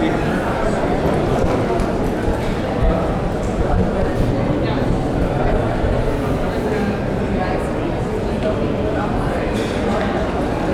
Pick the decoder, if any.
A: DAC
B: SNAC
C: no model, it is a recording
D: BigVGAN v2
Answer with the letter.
C